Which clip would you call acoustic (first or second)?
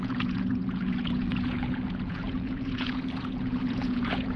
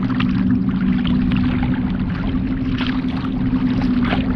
second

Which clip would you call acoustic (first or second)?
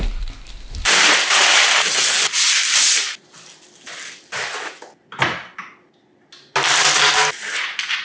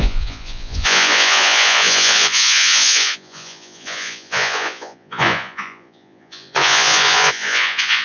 first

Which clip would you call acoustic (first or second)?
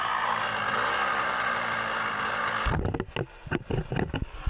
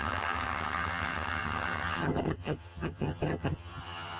first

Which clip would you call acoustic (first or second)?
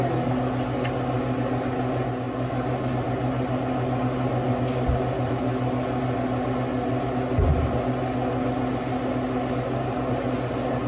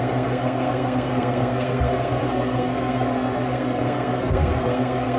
first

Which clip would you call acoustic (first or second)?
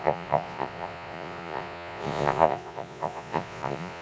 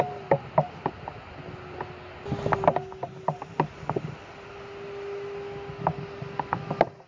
second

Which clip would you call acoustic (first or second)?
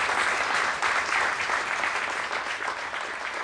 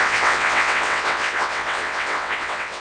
first